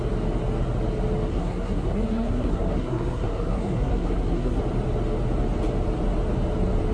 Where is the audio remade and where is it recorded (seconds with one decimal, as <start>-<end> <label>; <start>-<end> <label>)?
0.0-1.3 recorded; 1.3-4.6 remade; 4.6-6.9 recorded